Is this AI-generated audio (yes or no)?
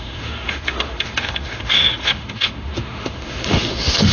yes